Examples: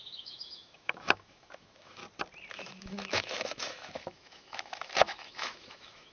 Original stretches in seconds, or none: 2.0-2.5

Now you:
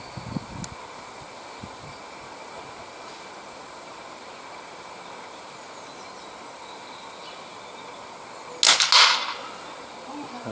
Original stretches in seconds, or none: 0.0-10.5

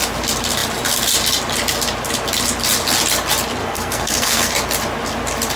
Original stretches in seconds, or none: 0.0-3.6; 4.5-5.6

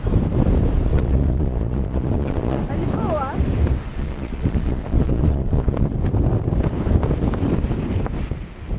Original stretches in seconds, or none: 0.0-0.9; 2.6-3.9; 5.9-8.8

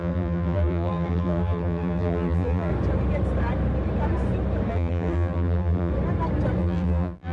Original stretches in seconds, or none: 2.7-4.7; 5.9-6.6

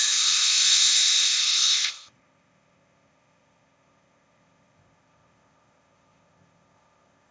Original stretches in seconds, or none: none

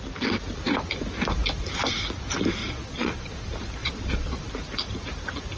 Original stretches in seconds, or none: 0.0-2.6; 3.3-3.8; 4.5-5.6

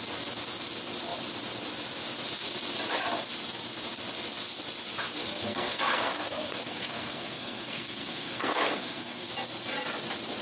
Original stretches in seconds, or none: 0.0-5.2; 9.3-10.4